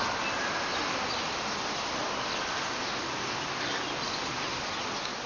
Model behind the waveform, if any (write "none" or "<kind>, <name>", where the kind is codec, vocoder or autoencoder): none